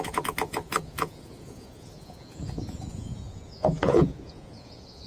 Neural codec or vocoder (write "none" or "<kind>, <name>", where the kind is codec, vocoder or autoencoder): vocoder, Vocos